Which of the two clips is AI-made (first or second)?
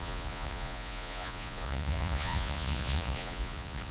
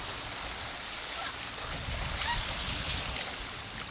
first